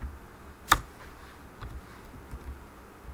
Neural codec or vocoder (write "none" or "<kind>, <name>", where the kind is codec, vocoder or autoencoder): none